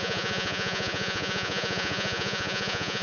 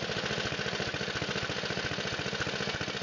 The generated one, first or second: first